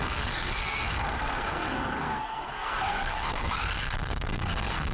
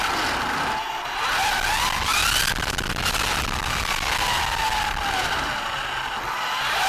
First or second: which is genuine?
second